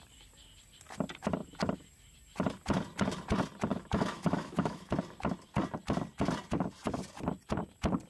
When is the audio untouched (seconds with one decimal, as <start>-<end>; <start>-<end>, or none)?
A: 0.0-3.7; 4.9-8.1